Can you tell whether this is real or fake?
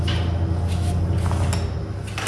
real